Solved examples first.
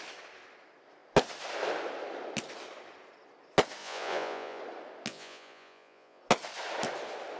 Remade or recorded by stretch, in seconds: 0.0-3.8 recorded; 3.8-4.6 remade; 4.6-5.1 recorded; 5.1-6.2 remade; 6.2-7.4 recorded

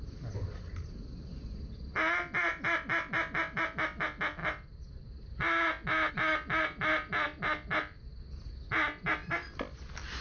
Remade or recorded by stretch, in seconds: 0.0-10.2 recorded

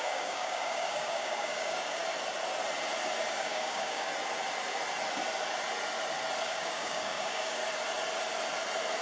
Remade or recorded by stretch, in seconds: 0.0-2.0 remade; 2.0-3.3 recorded; 3.3-4.1 remade; 4.1-6.4 recorded; 6.4-7.6 remade; 7.6-9.0 recorded

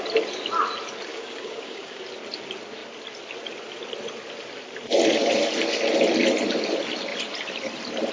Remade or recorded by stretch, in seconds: 0.0-1.1 recorded; 1.1-2.0 remade; 2.0-8.1 recorded

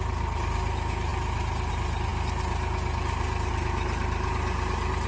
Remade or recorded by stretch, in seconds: 0.0-5.1 recorded

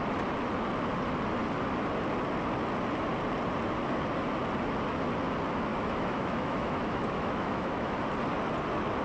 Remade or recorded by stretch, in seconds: 0.0-5.7 recorded; 5.7-8.0 remade; 8.0-9.0 recorded

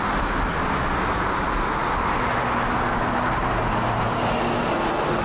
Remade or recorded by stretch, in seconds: 0.0-5.2 recorded

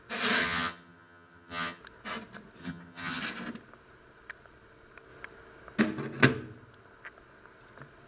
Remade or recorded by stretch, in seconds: 0.0-0.4 recorded; 0.4-1.8 remade; 1.8-2.6 recorded; 2.6-3.2 remade; 3.2-8.1 recorded